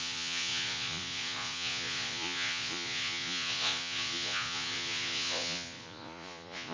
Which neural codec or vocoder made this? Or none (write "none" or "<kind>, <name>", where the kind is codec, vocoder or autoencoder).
vocoder, Vocos